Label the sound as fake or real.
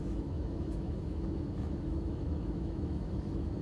fake